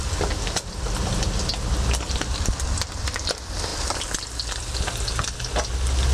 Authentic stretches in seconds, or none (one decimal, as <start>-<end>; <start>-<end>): 0.0-6.1